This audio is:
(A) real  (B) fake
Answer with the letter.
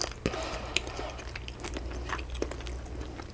A